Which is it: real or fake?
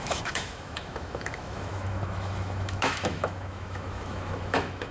fake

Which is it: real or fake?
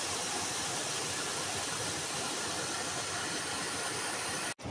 real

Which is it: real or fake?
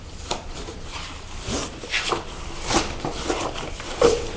real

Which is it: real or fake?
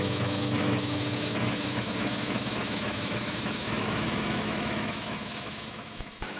fake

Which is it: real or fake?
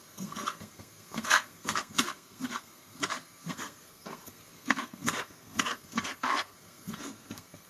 fake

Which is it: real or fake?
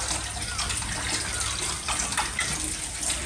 real